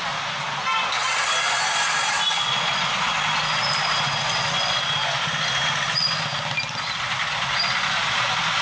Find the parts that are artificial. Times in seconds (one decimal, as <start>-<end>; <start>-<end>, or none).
none